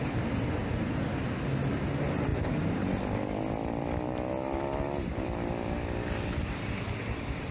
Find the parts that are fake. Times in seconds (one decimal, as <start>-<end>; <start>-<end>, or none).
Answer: none